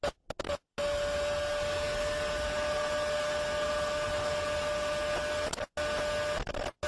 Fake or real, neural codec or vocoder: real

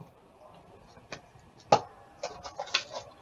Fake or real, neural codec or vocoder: real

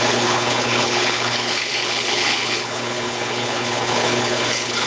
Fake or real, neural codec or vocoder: fake, codec, HILCodec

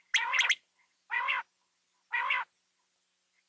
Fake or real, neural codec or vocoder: real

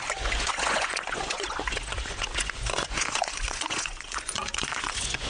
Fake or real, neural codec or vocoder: fake, vocoder, Vocos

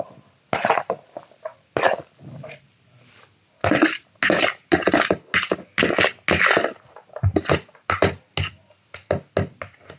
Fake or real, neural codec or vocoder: real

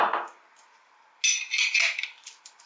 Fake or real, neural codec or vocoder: real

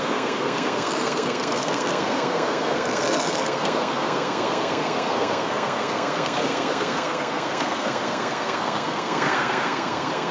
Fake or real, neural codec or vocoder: fake, codec, SNAC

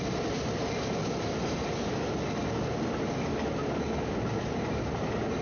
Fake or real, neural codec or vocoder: real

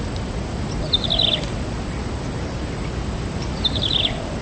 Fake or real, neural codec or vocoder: real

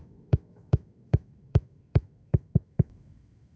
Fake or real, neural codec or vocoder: fake, autoencoder, DAC-VAE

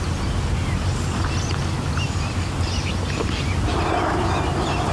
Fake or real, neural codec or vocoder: real